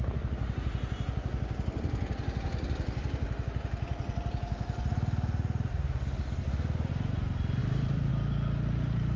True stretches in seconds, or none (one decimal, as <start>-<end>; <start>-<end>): 0.0-6.4; 6.9-7.6; 8.1-9.2